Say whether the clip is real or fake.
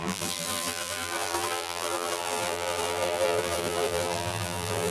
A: fake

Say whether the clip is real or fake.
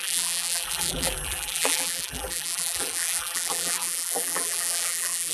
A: fake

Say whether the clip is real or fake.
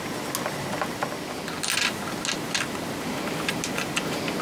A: real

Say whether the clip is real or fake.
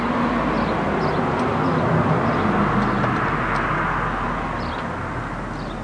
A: real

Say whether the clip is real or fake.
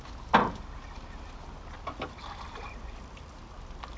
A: real